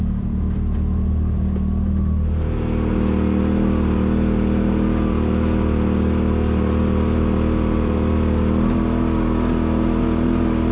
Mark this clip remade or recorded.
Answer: recorded